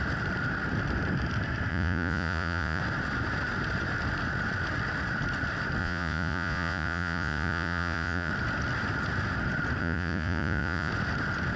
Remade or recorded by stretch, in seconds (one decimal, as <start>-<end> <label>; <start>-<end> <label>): 0.0-1.7 recorded; 1.7-2.8 remade; 2.8-5.8 recorded; 5.8-8.3 remade; 8.3-9.8 recorded; 9.8-10.9 remade; 10.9-11.6 recorded